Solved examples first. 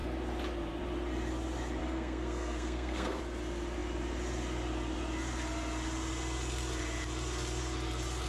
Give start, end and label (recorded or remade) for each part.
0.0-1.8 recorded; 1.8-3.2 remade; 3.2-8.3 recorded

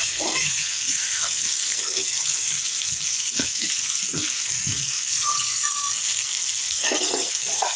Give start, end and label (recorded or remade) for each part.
0.0-7.8 remade

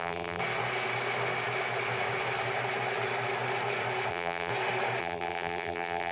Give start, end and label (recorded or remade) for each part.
0.0-0.4 remade; 0.4-4.1 recorded; 4.1-4.5 remade; 4.5-5.0 recorded; 5.0-6.1 remade

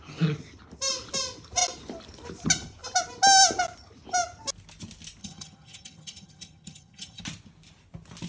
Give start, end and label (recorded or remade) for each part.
0.0-5.2 recorded; 5.2-7.2 remade; 7.2-8.3 recorded

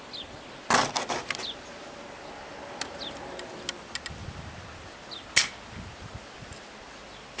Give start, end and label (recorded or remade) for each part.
0.0-7.4 recorded

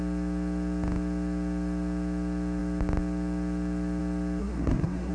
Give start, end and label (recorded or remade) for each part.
0.0-4.4 recorded; 4.4-5.1 remade

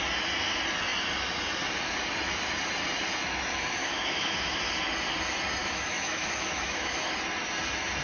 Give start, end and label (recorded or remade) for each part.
0.0-3.8 recorded; 3.8-4.6 remade; 4.6-5.6 recorded; 5.6-7.0 remade; 7.0-8.0 recorded